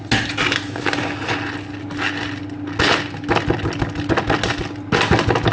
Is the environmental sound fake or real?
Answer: real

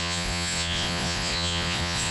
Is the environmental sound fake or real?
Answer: fake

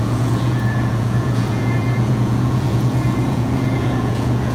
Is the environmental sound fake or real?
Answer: fake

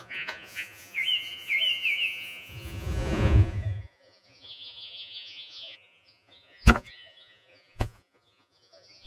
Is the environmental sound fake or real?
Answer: fake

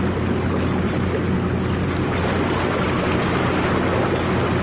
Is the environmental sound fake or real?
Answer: real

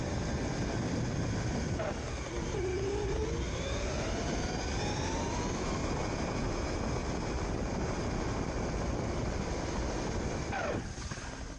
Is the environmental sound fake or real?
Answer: real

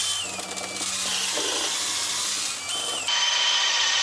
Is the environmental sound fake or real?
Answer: real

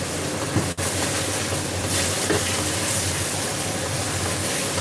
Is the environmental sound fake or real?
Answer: real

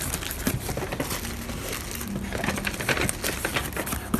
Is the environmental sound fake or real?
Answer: real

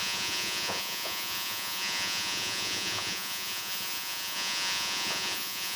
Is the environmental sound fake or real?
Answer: fake